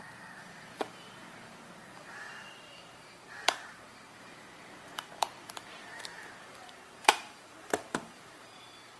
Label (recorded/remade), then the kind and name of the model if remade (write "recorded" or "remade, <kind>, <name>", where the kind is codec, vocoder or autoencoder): remade, vocoder, BigVGAN v2